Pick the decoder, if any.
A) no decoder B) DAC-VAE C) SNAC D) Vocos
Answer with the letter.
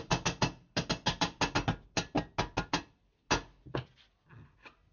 A